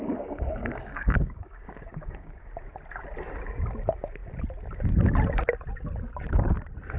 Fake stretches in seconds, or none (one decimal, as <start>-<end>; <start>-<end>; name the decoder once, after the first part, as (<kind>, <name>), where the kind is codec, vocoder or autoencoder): 0.0-2.5 (codec, DAC)